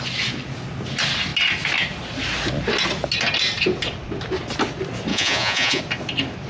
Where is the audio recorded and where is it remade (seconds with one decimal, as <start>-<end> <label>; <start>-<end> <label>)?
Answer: 0.0-5.1 recorded; 5.1-5.8 remade; 5.8-6.5 recorded